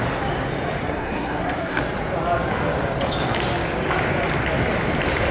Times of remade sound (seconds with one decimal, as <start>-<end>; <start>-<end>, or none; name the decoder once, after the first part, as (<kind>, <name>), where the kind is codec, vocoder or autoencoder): 0.8-1.8 (codec, SNAC)